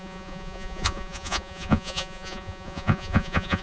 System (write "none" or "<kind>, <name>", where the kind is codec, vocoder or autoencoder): vocoder, Vocos